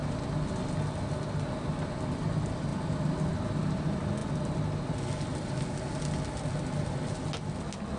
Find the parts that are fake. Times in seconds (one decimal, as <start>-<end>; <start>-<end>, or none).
none